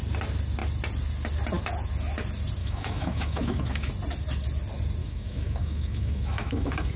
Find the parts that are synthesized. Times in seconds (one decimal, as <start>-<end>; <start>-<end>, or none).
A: 2.6-3.9; 5.0-7.0